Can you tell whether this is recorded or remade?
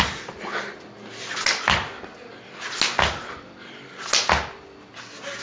recorded